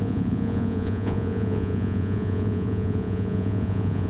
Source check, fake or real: fake